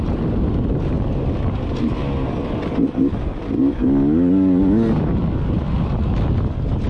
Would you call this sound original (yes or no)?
yes